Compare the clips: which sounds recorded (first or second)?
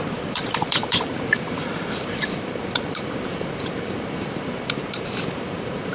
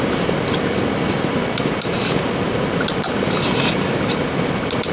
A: second